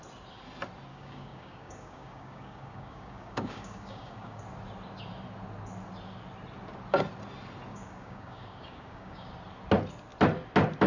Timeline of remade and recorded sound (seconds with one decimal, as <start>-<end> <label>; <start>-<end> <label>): 0.0-0.9 recorded; 0.9-4.4 remade; 4.4-7.7 recorded; 7.7-9.3 remade; 9.3-10.9 recorded